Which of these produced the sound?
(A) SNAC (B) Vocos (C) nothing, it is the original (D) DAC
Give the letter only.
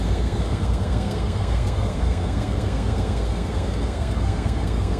A